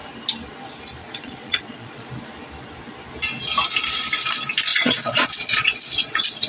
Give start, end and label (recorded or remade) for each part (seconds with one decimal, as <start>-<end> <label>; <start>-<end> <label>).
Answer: 0.0-1.0 recorded; 1.0-2.1 remade; 2.1-4.7 recorded; 4.7-6.5 remade